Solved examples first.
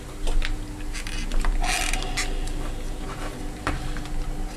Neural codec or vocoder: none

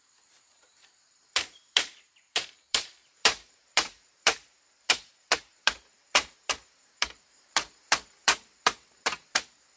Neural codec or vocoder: vocoder, BigVGAN v2